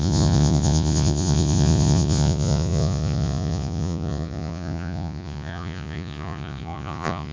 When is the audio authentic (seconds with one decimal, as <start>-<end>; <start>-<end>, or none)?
none